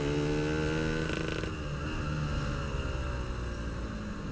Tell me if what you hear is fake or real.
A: real